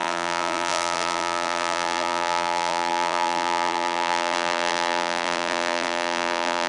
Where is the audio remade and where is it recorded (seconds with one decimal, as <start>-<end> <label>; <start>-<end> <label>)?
0.0-6.7 remade